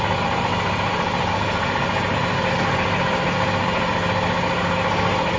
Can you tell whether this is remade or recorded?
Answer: recorded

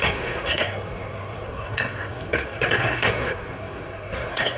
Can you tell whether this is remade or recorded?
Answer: remade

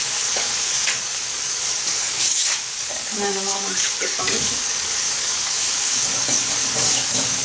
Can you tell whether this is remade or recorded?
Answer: remade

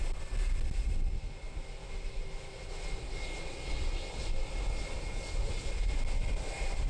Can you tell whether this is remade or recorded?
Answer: recorded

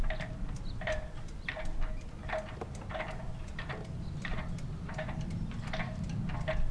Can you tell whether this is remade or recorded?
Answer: recorded